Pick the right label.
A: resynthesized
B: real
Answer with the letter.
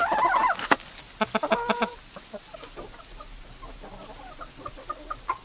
B